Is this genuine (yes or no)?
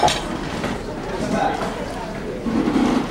no